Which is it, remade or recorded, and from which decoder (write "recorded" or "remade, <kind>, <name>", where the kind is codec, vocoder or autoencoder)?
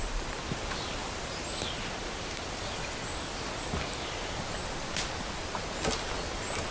recorded